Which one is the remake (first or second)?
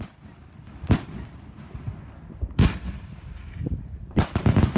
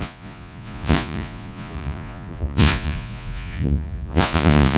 second